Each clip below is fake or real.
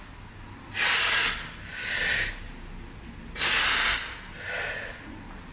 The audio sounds real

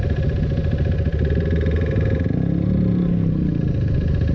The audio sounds real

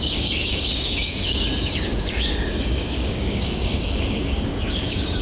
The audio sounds fake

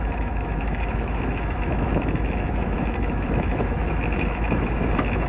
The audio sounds fake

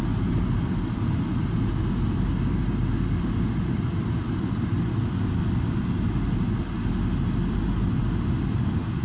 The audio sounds real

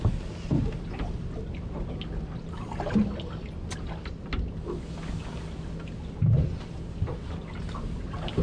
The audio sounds real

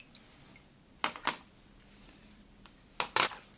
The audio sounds real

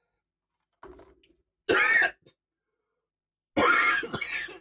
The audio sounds real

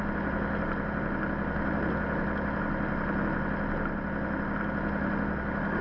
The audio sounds real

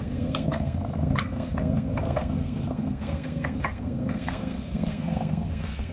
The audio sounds fake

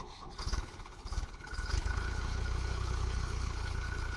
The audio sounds fake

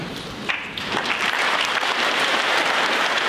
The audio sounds fake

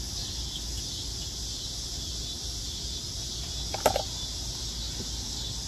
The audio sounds real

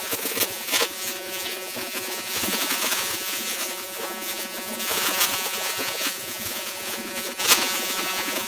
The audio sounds fake